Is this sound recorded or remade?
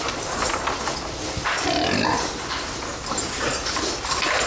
recorded